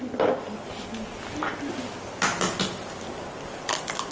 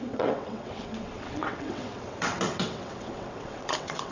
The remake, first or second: second